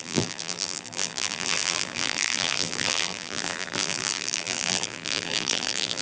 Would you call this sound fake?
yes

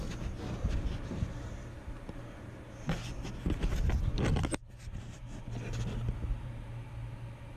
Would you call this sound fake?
no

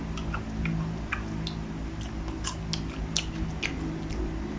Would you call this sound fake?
no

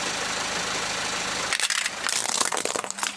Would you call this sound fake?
yes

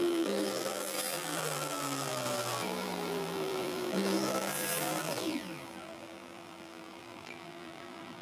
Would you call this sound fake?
yes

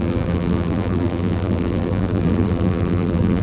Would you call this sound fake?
yes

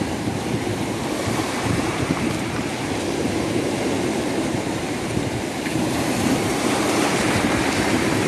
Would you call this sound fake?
yes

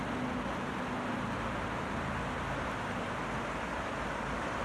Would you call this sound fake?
no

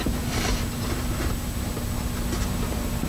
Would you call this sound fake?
yes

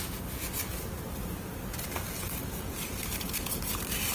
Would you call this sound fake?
no